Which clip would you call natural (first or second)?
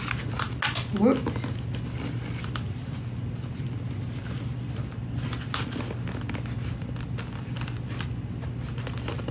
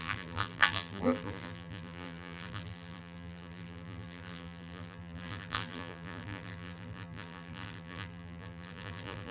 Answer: first